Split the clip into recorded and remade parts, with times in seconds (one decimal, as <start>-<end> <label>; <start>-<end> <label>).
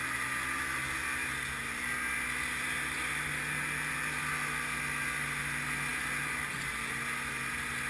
0.0-7.9 recorded